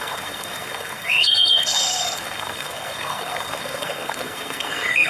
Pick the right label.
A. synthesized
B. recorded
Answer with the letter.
A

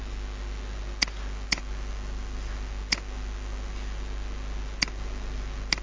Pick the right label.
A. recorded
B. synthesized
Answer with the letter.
A